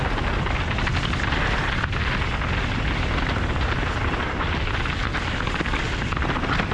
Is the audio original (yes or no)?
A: yes